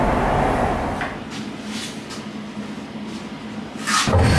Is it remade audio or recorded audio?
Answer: recorded